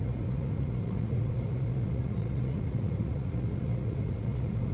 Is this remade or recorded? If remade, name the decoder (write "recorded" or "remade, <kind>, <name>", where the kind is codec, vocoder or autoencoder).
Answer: remade, vocoder, Vocos